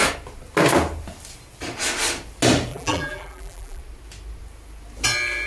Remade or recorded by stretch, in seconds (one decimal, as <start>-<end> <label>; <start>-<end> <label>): 0.0-2.7 recorded; 2.7-3.8 remade; 3.8-5.5 recorded

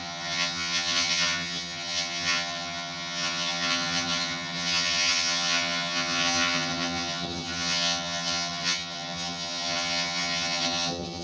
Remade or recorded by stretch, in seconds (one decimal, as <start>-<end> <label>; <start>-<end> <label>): 0.0-11.2 remade

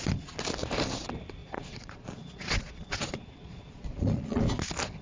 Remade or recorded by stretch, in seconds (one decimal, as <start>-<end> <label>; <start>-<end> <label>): 0.0-1.4 recorded; 1.4-4.4 remade; 4.4-5.0 recorded

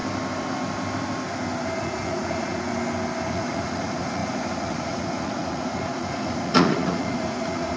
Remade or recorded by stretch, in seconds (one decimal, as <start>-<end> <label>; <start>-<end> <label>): 0.0-1.8 recorded; 1.8-2.7 remade; 2.7-3.3 recorded; 3.3-7.8 remade

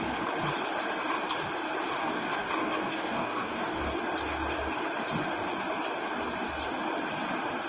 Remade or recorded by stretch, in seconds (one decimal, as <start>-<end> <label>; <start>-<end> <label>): 0.0-2.0 recorded; 2.0-4.0 remade; 4.0-7.7 recorded

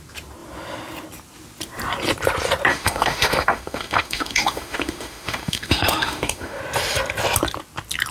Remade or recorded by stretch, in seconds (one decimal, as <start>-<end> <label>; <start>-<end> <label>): 0.0-2.7 recorded; 2.7-6.6 remade; 6.6-8.1 recorded